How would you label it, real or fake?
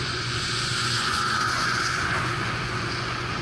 fake